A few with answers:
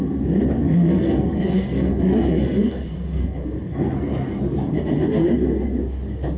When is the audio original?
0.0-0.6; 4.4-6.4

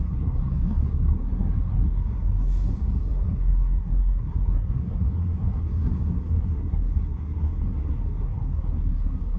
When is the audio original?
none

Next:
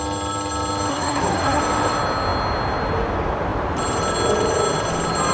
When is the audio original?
0.0-0.9; 1.6-5.3